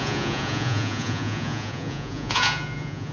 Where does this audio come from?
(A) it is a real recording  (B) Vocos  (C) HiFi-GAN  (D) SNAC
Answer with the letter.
B